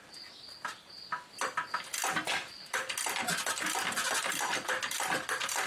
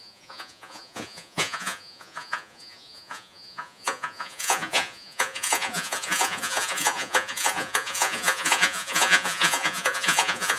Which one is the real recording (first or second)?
first